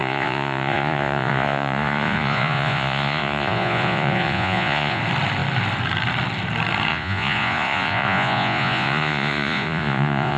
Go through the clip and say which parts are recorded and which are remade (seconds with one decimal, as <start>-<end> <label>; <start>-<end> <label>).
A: 0.0-5.0 remade; 5.0-6.9 recorded; 6.9-10.4 remade